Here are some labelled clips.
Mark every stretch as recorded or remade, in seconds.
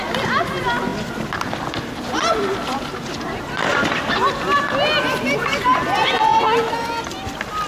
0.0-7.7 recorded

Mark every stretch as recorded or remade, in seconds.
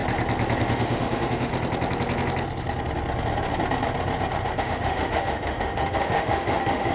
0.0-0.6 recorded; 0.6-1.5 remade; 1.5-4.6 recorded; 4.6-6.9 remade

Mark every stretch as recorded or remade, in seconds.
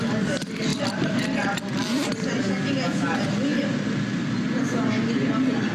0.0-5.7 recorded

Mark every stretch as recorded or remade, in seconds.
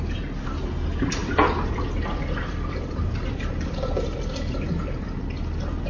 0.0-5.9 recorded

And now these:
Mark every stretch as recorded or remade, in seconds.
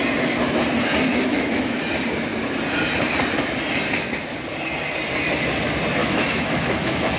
0.0-1.1 recorded; 1.1-1.8 remade; 1.8-6.0 recorded; 6.0-7.2 remade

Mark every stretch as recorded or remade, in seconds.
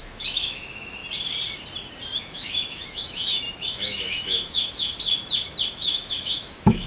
0.0-1.0 remade; 1.0-2.2 recorded; 2.2-4.9 remade; 4.9-5.7 recorded; 5.7-6.9 remade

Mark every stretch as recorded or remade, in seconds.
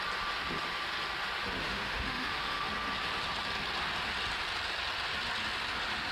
0.0-1.6 recorded; 1.6-2.7 remade; 2.7-6.1 recorded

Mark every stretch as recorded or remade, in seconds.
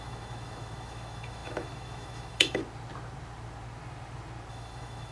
0.0-2.6 remade; 2.6-4.5 recorded; 4.5-5.1 remade